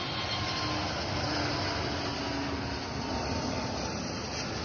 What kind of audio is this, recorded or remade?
recorded